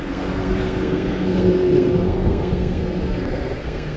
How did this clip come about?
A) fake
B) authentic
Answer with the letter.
A